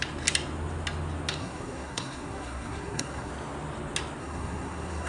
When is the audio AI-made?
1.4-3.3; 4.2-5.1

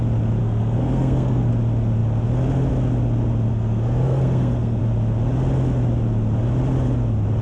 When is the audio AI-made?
0.4-1.5; 3.5-4.8

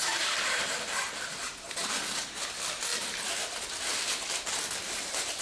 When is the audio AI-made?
none

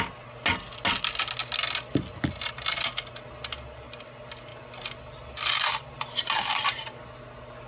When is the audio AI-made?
none

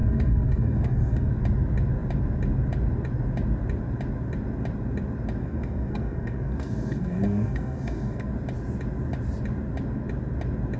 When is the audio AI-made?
0.0-1.3; 5.4-8.3